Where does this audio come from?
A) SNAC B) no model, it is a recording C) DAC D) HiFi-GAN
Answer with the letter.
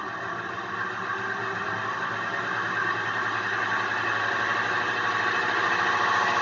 B